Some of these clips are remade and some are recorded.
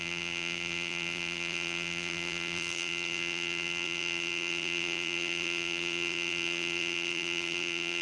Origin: remade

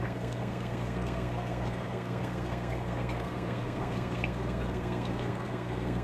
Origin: remade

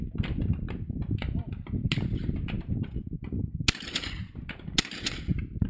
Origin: recorded